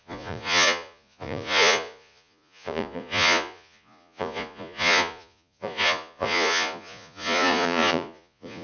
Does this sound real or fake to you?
fake